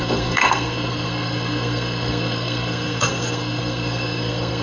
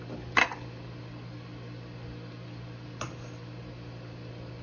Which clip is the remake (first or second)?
first